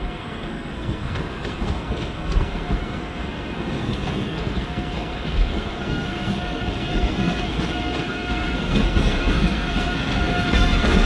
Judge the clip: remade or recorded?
remade